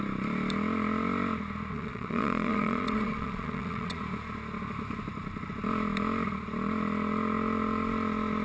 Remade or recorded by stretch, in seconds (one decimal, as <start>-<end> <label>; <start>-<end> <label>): 0.0-1.7 recorded; 1.7-4.0 remade; 4.0-8.4 recorded